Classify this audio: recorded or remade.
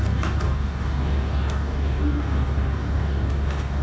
remade